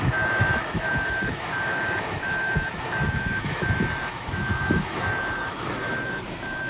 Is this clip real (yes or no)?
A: no